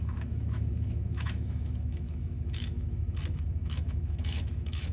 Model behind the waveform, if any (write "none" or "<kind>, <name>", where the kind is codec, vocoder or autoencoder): autoencoder, DAC-VAE